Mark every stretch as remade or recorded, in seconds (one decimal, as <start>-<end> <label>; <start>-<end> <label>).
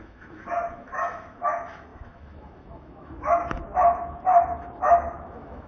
0.0-5.7 remade